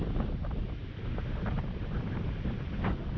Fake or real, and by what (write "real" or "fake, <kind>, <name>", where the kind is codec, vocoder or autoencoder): real